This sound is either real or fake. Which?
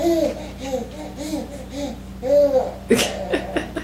real